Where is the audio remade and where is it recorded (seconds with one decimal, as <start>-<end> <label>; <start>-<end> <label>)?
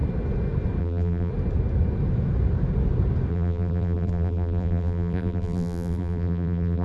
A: 0.0-0.8 recorded; 0.8-1.3 remade; 1.3-3.3 recorded; 3.3-6.8 remade